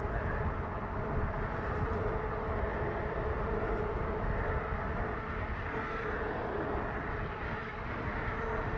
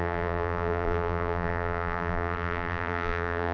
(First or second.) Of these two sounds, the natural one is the first